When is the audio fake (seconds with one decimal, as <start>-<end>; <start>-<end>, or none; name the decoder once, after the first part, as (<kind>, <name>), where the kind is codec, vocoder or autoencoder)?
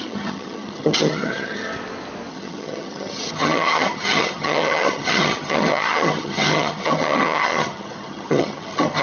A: 0.0-1.7 (vocoder, HiFi-GAN); 2.3-9.0